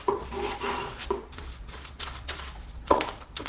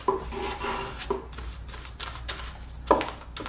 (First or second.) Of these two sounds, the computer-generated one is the first